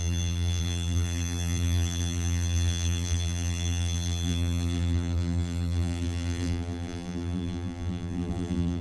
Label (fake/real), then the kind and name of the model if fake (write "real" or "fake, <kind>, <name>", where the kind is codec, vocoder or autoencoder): fake, vocoder, BigVGAN v2